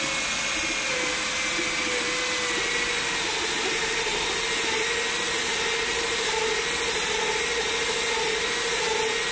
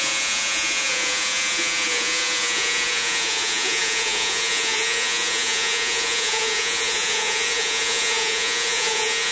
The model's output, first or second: second